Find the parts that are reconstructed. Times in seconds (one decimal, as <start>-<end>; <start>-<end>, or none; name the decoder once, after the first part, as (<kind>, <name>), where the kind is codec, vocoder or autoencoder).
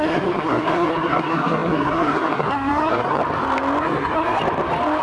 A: 0.0-3.2 (codec, SNAC); 3.8-4.4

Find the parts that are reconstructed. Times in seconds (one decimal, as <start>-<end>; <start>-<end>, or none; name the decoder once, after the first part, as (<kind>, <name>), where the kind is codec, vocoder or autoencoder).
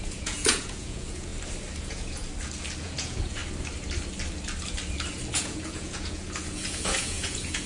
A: 0.0-1.3 (vocoder, Vocos); 1.8-2.2; 2.8-3.4; 5.3-7.7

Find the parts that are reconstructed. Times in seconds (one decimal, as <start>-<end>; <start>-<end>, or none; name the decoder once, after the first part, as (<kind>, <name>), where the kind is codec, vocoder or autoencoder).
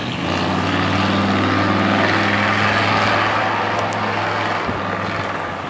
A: none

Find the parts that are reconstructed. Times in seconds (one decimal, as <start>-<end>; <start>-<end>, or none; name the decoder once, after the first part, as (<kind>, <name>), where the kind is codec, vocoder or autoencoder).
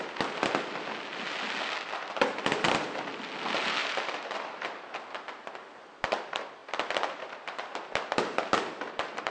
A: none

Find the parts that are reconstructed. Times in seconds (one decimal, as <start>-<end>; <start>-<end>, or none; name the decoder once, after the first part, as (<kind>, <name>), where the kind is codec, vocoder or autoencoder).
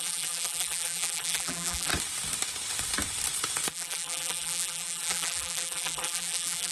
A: 0.0-1.9 (vocoder, BigVGAN v2); 3.7-6.7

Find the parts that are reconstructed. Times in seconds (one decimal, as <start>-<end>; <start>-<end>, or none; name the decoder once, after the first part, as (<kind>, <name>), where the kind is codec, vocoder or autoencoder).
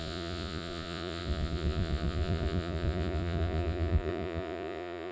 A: 0.0-5.1 (vocoder, Vocos)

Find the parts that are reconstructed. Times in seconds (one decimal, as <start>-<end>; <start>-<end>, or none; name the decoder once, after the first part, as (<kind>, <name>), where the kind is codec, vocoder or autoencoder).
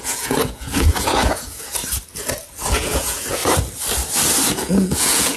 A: 0.0-1.8 (vocoder, Vocos); 2.7-3.4; 4.5-5.4